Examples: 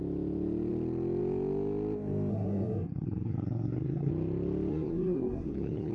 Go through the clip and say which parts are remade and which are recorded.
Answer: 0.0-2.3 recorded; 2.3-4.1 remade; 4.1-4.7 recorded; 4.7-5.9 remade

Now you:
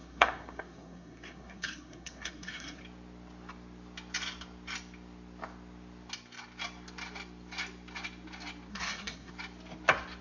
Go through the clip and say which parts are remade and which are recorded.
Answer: 0.0-2.8 remade; 2.8-8.7 recorded; 8.7-9.3 remade; 9.3-10.2 recorded